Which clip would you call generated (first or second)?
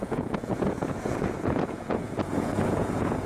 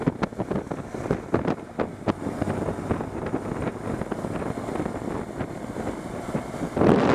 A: first